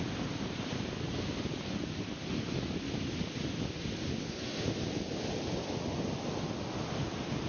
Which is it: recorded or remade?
recorded